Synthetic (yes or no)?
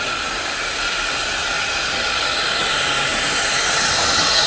no